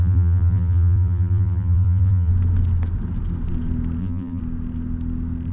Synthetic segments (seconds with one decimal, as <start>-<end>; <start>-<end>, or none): 0.0-2.3; 4.0-4.4